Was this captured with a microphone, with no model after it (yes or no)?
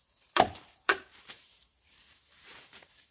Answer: no